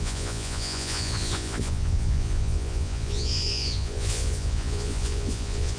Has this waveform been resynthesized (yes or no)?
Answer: yes